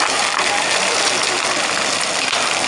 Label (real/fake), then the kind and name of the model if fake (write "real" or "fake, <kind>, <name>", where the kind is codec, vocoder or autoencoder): real